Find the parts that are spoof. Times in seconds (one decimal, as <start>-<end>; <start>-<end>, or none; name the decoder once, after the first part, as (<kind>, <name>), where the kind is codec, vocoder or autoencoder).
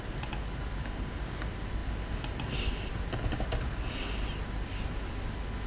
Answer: 0.8-1.4 (codec, DAC)